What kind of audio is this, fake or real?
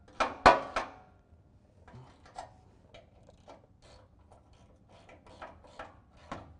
real